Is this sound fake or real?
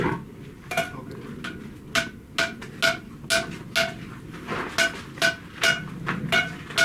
real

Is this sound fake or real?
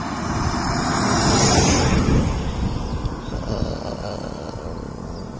real